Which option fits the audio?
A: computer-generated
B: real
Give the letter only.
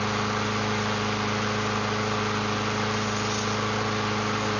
B